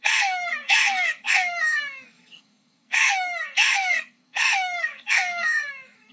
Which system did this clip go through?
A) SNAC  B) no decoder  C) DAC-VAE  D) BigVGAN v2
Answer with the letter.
A